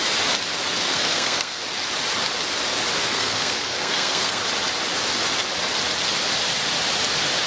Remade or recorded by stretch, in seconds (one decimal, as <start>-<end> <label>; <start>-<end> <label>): 0.0-0.9 recorded; 0.9-1.6 remade; 1.6-3.1 recorded; 3.1-4.4 remade; 4.4-7.5 recorded